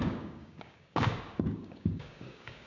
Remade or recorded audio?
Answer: remade